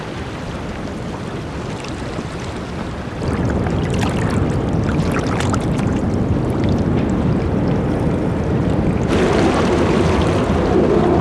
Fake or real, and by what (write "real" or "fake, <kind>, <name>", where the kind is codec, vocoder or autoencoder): real